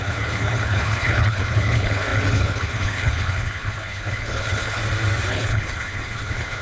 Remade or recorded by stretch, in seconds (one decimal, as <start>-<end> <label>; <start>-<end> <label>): 0.0-4.8 remade; 4.8-5.3 recorded; 5.3-6.6 remade